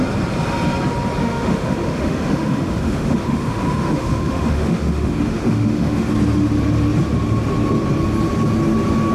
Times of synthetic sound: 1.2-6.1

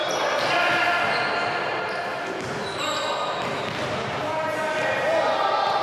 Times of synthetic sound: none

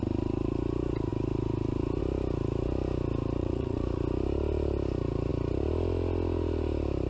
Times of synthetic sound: 3.4-4.0

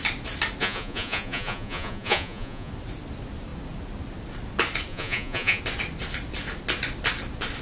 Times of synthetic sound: 0.6-2.7; 4.9-5.6

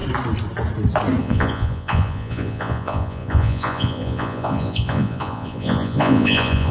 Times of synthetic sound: 1.2-6.7